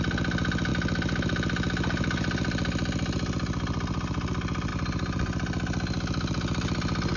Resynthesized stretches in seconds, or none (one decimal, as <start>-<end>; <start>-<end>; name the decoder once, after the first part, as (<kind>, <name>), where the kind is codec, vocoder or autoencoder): none